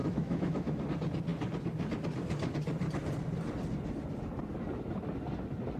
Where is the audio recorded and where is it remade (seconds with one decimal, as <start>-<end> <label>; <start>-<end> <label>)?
0.0-0.8 remade; 0.8-5.8 recorded